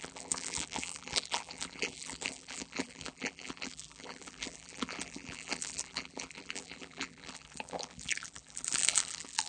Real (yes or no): no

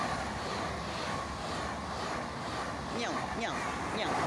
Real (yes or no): yes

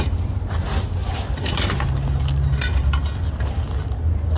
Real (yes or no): yes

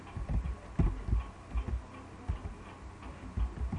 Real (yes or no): yes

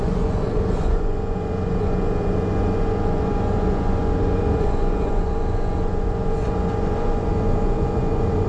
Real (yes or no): no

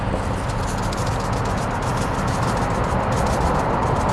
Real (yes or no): yes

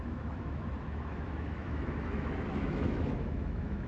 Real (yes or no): no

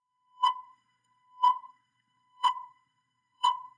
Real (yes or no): no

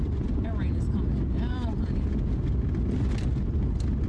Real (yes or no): yes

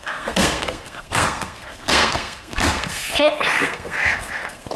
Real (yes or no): no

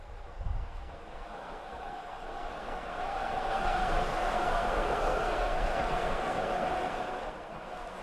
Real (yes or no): no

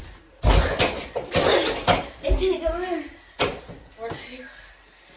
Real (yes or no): yes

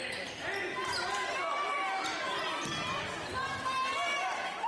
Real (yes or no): yes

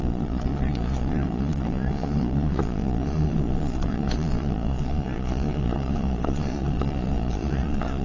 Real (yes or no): no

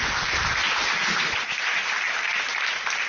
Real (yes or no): yes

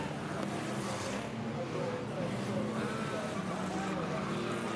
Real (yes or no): yes